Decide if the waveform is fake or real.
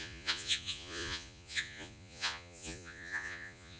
fake